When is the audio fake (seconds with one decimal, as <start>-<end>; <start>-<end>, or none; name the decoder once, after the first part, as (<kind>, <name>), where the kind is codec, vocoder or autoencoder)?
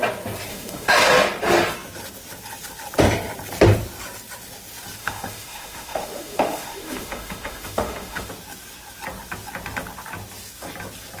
0.5-1.1 (autoencoder, DAC-VAE); 5.0-8.3